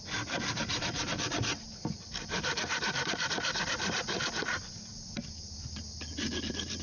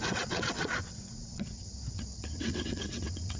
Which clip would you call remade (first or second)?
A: second